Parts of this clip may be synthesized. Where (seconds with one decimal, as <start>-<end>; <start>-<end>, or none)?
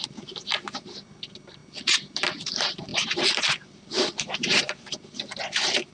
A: 0.0-1.6; 2.4-5.9